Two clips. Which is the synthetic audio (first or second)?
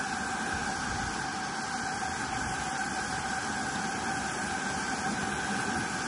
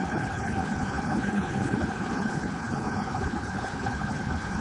second